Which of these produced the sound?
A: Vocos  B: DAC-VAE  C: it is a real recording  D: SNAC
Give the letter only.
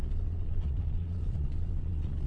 A